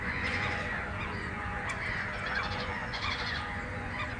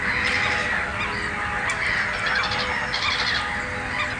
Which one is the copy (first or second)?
first